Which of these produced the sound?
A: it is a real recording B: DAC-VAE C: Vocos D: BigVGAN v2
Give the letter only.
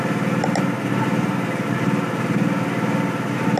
A